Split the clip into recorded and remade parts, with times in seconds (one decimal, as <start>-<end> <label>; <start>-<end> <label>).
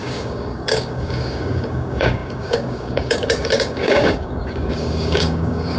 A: 0.0-5.8 remade